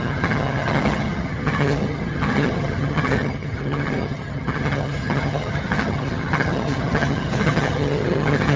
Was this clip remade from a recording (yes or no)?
yes